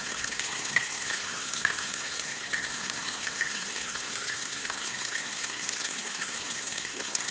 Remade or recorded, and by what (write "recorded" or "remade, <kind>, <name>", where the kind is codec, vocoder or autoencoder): remade, codec, SNAC